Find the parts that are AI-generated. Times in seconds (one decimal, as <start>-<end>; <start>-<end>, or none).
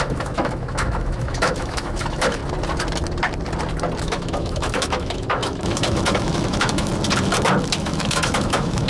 0.0-2.4; 4.0-6.9; 7.8-8.9